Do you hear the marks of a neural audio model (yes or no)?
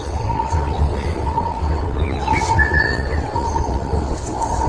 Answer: yes